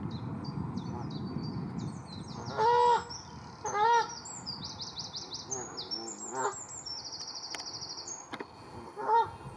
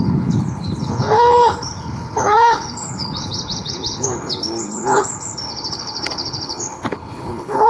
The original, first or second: first